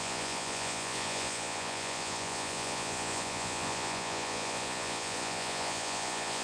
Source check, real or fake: fake